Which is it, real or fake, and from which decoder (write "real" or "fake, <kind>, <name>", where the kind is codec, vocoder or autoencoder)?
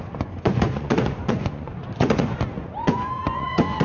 fake, vocoder, Vocos